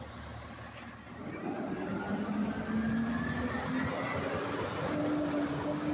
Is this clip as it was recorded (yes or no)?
yes